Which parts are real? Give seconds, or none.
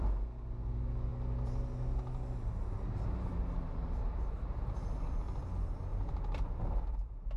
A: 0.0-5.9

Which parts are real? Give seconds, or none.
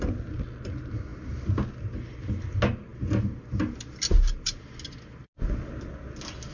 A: 0.0-6.5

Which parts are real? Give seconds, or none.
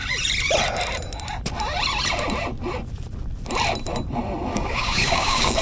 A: 0.0-4.5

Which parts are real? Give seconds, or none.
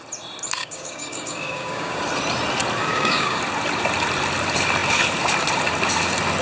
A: 0.0-0.6; 2.0-2.8; 3.4-6.4